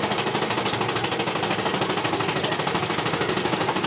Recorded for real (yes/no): yes